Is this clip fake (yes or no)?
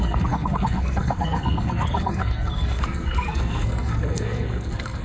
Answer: yes